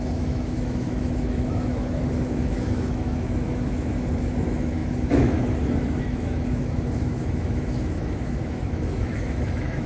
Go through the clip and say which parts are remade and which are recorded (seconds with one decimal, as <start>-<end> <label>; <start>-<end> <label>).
0.0-9.9 remade